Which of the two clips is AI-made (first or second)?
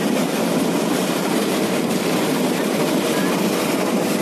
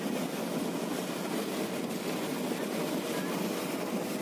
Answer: first